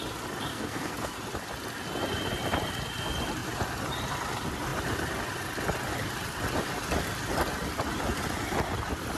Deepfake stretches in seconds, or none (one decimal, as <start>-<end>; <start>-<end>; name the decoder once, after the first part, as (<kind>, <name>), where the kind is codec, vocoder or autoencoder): 0.5-1.2 (codec, SNAC)